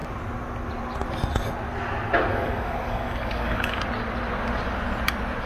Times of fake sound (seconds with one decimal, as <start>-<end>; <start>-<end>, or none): 2.3-3.8